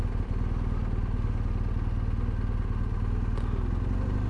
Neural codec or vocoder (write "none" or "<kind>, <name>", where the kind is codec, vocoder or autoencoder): none